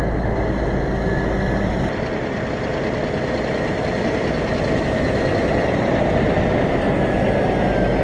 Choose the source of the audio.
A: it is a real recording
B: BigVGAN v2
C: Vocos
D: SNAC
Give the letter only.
A